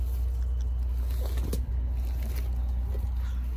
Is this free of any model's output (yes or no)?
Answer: yes